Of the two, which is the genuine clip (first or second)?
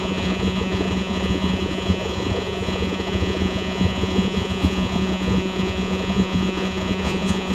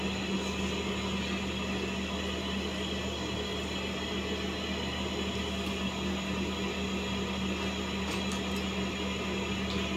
second